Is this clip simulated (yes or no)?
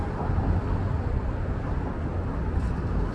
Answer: no